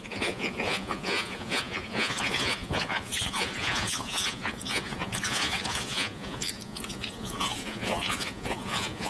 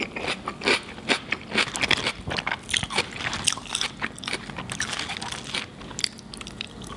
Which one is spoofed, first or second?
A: first